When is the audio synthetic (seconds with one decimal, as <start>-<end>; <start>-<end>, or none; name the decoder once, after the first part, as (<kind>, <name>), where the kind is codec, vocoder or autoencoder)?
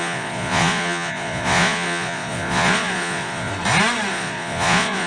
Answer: 0.0-3.5 (vocoder, Vocos); 4.1-5.1